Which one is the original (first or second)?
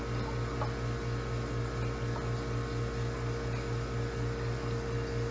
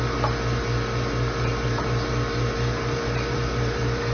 first